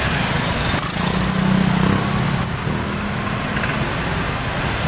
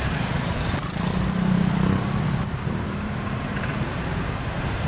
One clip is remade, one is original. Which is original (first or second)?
first